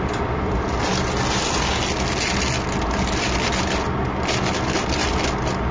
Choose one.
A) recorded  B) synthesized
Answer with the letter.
A